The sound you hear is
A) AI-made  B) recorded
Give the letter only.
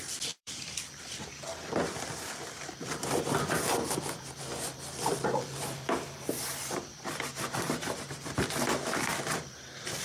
A